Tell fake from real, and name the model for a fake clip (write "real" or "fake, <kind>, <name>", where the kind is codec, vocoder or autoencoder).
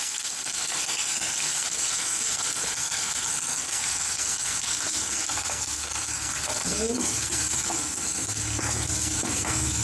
fake, codec, SNAC